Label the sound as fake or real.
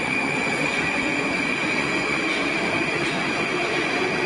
fake